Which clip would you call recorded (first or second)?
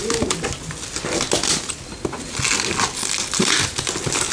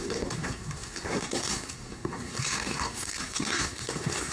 first